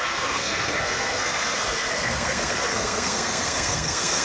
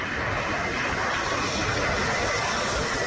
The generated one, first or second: first